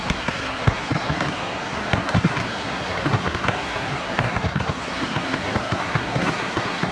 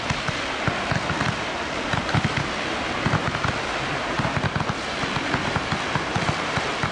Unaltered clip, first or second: second